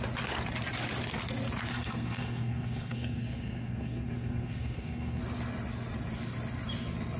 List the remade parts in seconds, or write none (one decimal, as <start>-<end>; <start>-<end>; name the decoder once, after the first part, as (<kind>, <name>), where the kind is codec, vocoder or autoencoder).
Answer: 1.7-5.2 (codec, SNAC)